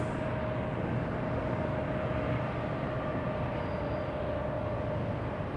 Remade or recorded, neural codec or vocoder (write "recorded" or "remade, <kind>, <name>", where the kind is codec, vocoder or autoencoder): recorded